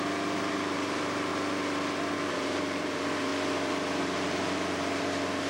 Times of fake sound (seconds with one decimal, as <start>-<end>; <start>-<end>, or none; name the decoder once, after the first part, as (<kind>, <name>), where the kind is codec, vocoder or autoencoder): 0.0-1.3 (vocoder, BigVGAN v2); 2.1-3.3; 4.0-5.5